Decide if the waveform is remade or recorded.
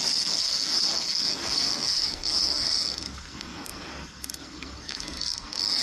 remade